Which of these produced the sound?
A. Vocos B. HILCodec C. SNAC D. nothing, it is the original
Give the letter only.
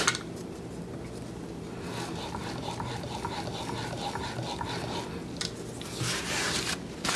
D